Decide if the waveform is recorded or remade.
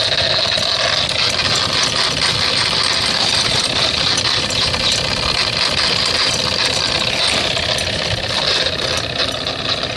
recorded